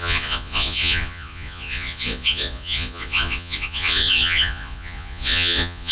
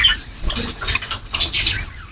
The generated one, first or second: first